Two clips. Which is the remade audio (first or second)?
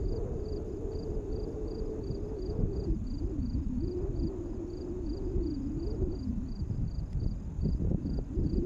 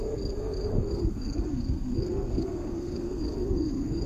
second